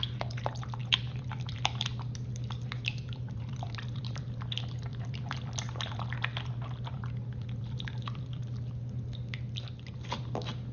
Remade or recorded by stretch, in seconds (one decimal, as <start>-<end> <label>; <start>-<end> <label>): 0.0-0.8 recorded; 0.8-4.2 remade; 4.2-4.9 recorded; 4.9-8.4 remade; 8.4-10.7 recorded